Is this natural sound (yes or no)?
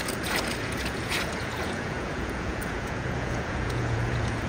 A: no